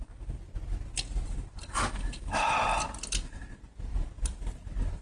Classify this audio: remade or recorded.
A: recorded